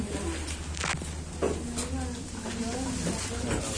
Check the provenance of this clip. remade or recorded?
recorded